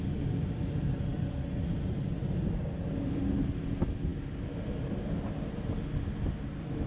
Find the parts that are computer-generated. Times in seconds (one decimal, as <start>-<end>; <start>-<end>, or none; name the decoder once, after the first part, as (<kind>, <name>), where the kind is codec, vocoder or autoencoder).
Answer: none